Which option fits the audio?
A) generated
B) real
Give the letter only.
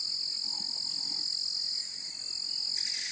B